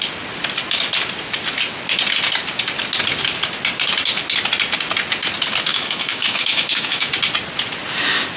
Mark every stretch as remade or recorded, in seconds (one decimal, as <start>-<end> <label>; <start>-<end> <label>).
0.0-5.7 recorded; 5.7-7.1 remade; 7.1-8.4 recorded